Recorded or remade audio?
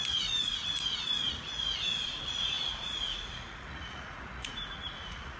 remade